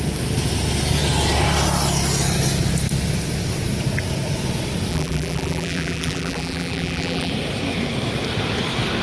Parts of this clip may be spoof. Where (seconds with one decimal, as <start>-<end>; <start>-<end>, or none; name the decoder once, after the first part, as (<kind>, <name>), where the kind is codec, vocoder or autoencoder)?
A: 4.9-7.3 (vocoder, BigVGAN v2)